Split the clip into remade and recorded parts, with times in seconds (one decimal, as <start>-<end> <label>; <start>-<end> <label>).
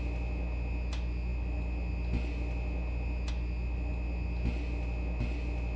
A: 0.0-5.8 recorded